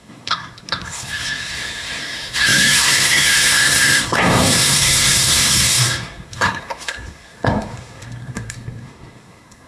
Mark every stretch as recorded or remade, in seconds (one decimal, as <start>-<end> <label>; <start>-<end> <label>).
0.0-9.7 remade